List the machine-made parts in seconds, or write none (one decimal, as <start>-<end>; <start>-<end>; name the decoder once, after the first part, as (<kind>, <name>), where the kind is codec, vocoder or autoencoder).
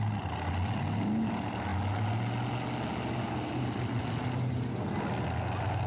none